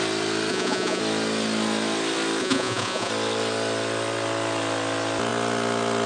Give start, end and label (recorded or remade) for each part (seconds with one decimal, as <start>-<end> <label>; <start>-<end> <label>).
0.0-0.5 recorded; 0.5-1.0 remade; 1.0-2.4 recorded; 2.4-3.1 remade; 3.1-6.1 recorded